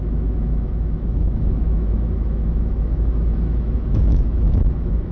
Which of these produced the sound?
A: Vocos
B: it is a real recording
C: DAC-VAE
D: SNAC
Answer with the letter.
C